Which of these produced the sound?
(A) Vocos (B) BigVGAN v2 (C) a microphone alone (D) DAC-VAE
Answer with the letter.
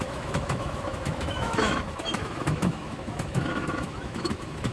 D